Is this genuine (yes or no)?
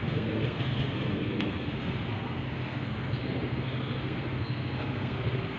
no